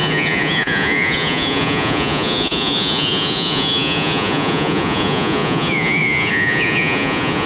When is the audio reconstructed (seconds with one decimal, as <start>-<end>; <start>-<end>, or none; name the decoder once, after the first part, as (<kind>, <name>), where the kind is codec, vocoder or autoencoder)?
0.0-7.5 (vocoder, Vocos)

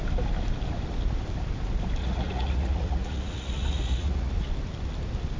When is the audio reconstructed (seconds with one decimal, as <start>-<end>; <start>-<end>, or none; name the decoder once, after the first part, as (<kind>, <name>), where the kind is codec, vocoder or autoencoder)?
2.0-4.5 (vocoder, Vocos)

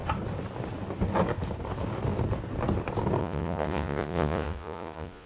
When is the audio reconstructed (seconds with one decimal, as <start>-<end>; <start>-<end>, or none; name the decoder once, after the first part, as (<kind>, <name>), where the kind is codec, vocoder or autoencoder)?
3.2-5.3 (vocoder, Vocos)

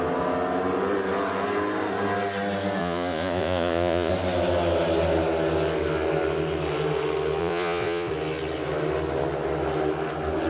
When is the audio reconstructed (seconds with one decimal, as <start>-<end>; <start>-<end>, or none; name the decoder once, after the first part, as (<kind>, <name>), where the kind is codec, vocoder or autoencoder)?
2.8-4.1 (vocoder, Vocos); 7.4-8.1